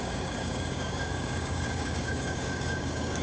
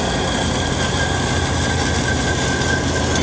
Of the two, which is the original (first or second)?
second